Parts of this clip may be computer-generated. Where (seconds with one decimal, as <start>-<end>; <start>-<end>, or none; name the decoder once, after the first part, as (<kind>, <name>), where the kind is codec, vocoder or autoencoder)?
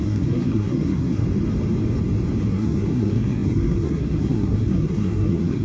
0.0-1.2 (codec, SNAC); 2.5-5.6